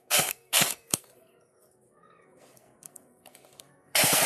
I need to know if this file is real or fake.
fake